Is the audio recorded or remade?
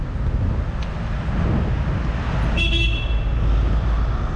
recorded